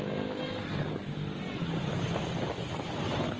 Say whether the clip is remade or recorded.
recorded